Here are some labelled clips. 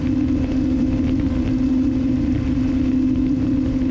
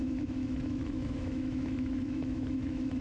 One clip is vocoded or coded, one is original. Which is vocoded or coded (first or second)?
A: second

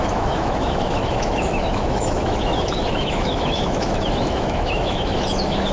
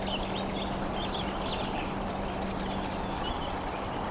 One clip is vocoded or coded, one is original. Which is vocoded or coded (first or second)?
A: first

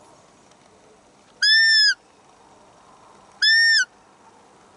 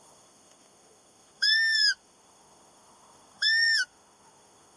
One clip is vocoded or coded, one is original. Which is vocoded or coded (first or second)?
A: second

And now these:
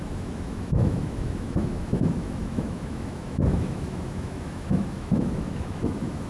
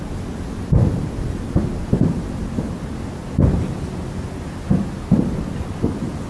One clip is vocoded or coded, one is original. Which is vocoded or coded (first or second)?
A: first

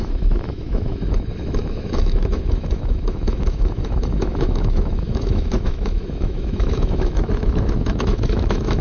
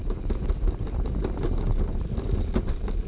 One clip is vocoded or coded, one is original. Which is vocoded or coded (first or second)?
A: first